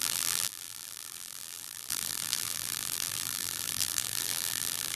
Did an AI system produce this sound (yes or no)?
yes